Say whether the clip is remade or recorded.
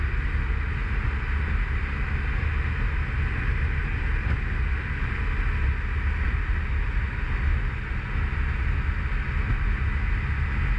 recorded